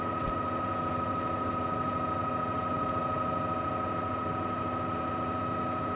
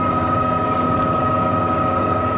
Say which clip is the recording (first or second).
first